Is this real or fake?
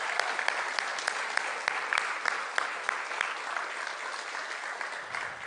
real